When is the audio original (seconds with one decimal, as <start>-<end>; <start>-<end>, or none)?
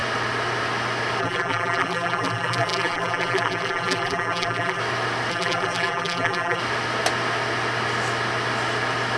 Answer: 0.0-1.2; 4.8-5.3; 6.6-9.2